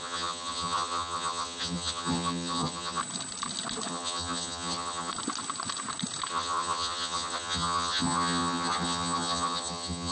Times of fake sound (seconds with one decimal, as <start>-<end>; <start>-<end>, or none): 0.0-3.0; 3.9-5.1; 6.3-10.1